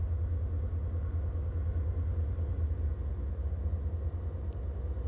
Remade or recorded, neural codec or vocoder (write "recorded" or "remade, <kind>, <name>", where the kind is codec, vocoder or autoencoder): recorded